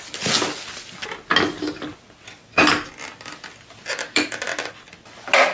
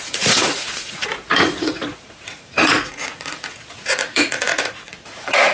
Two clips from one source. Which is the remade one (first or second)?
second